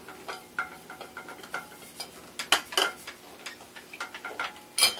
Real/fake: real